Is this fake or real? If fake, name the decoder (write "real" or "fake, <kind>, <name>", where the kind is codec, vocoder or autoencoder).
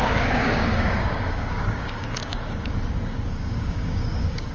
fake, codec, DAC